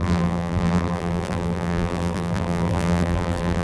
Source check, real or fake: fake